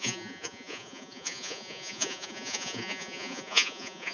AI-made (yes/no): yes